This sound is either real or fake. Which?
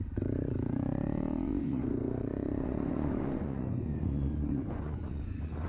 fake